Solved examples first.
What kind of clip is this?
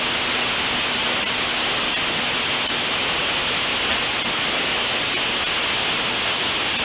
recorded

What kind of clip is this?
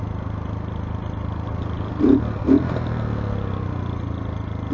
recorded